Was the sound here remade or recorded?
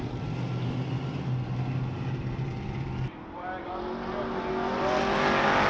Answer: recorded